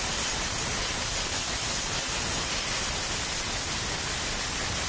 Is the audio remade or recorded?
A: recorded